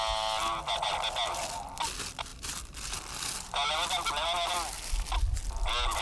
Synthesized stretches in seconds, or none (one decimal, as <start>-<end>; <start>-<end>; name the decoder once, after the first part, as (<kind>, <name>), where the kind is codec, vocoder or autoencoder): none